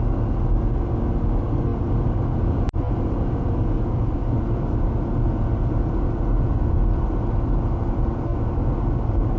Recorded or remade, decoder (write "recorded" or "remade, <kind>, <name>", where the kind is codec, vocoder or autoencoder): recorded